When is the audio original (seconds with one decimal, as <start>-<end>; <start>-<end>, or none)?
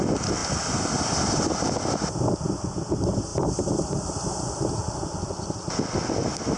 0.0-6.6